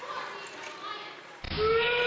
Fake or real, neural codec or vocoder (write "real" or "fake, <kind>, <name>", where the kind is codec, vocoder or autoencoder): real